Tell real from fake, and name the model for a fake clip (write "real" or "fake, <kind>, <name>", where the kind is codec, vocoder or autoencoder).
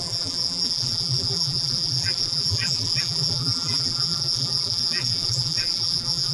fake, vocoder, BigVGAN v2